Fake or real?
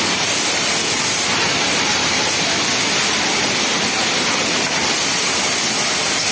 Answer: fake